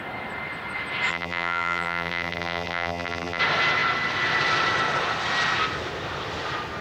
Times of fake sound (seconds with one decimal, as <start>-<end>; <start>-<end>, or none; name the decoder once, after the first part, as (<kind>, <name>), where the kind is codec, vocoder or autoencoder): 1.1-3.4 (vocoder, BigVGAN v2)